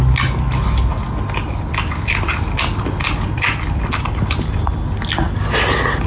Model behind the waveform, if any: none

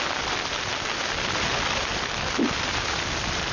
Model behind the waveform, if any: none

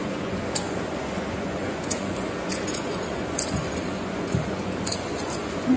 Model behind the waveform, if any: vocoder, Vocos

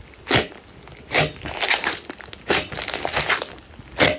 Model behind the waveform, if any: none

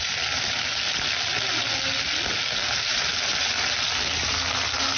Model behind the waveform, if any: none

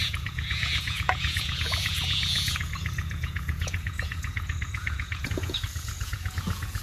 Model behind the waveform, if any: vocoder, Vocos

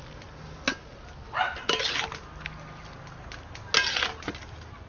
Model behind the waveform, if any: none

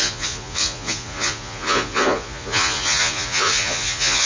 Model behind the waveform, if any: vocoder, Vocos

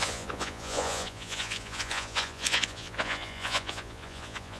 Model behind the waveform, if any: vocoder, Vocos